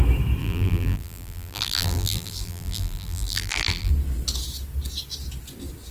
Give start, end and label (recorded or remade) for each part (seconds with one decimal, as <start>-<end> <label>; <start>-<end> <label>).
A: 0.0-0.4 recorded; 0.4-3.9 remade; 3.9-5.9 recorded